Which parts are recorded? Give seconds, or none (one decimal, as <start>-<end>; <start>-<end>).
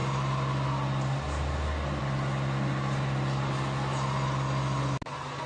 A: 0.0-5.5